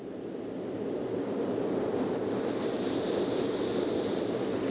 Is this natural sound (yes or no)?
yes